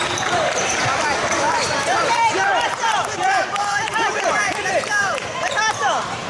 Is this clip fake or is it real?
fake